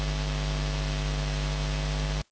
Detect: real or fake real